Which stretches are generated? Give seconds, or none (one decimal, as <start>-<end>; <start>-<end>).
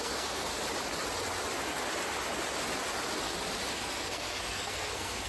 0.0-0.5; 3.7-5.3